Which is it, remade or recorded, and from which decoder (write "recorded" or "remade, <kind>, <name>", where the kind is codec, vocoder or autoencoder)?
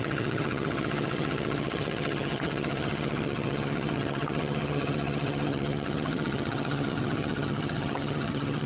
remade, vocoder, HiFi-GAN